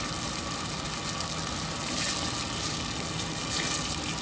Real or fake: real